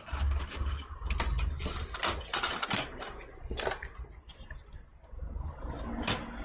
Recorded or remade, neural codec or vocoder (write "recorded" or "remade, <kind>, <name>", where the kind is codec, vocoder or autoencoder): recorded